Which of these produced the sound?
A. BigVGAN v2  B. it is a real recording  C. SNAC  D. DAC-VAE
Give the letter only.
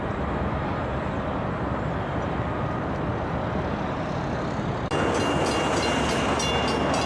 B